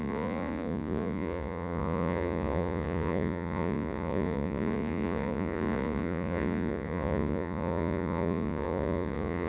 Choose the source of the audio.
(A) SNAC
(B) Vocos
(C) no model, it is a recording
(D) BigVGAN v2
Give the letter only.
B